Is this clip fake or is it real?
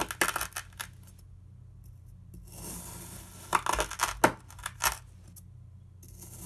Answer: real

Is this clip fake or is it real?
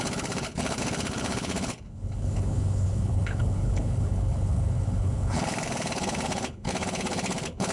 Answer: fake